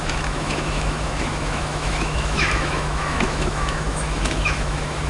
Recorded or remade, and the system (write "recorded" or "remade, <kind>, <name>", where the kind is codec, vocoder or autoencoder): remade, autoencoder, DAC-VAE